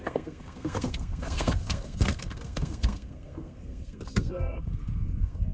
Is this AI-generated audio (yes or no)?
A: yes